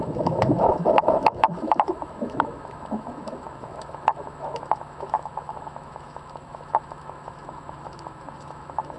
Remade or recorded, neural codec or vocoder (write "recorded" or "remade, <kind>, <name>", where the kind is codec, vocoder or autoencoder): remade, autoencoder, DAC-VAE